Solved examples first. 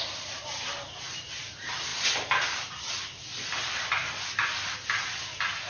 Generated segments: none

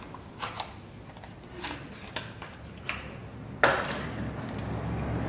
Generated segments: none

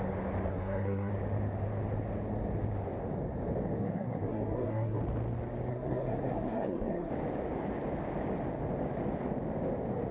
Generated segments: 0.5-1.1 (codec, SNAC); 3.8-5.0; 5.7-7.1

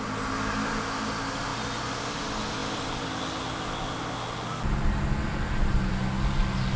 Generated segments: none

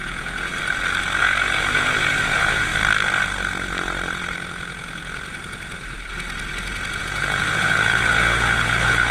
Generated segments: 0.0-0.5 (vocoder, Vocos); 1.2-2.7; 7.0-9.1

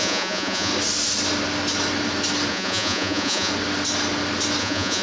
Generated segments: 0.0-0.7 (vocoder, Vocos); 2.5-3.5; 4.6-5.0

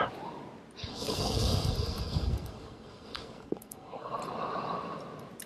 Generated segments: 0.9-4.2 (codec, SNAC)

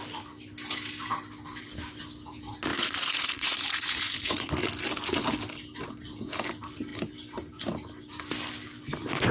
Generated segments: 2.7-4.5 (vocoder, Vocos)